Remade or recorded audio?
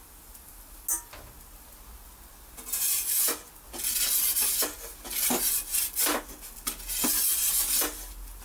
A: recorded